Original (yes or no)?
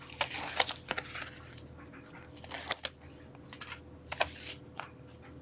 yes